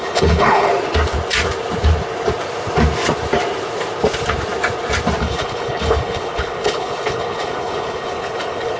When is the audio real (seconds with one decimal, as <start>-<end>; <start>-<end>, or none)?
0.7-5.2